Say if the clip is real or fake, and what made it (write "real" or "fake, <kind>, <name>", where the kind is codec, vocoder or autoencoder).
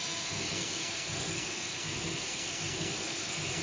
fake, codec, SNAC